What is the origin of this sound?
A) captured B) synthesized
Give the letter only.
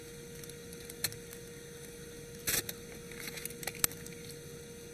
A